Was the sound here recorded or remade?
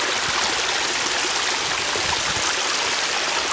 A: recorded